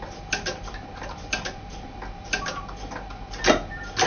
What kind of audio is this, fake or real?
real